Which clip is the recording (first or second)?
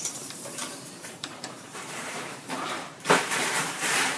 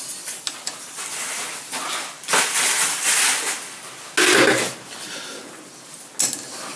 second